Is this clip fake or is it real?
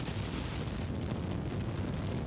real